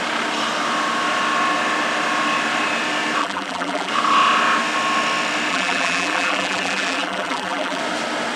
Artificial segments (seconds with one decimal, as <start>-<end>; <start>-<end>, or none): 3.2-3.9; 5.5-7.8